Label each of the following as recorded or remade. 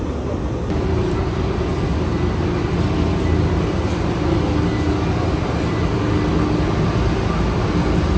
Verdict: recorded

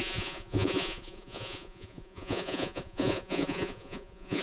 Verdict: remade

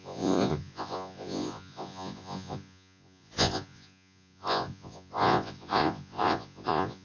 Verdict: remade